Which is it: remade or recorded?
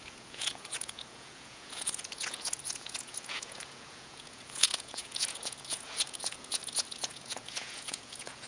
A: remade